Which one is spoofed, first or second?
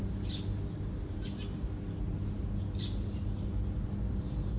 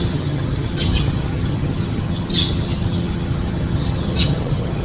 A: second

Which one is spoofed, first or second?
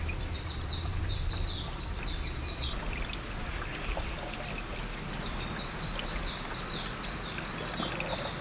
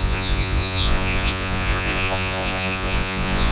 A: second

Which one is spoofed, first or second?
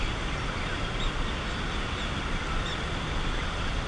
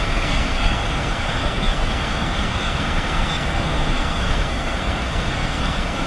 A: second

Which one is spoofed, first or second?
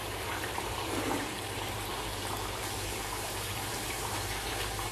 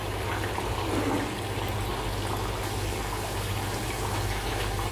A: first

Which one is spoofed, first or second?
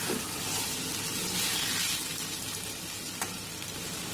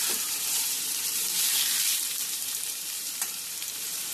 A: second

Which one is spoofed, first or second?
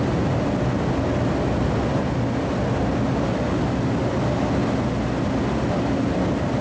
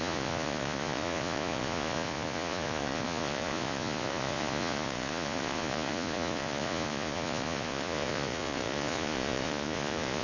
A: second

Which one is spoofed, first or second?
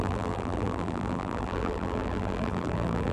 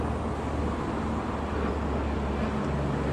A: first